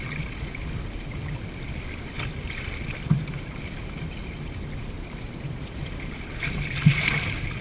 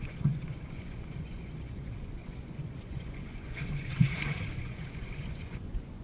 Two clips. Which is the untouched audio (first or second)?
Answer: first